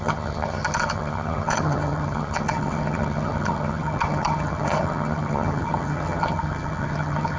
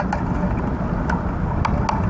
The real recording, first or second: second